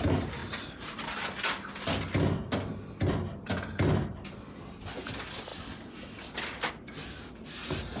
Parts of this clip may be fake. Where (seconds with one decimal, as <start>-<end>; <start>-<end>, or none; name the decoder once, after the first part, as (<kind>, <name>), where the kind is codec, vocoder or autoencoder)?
none